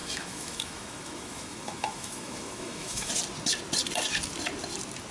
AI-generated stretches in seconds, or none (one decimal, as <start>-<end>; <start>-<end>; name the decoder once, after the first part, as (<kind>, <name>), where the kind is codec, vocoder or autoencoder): 0.0-3.1 (autoencoder, DAC-VAE)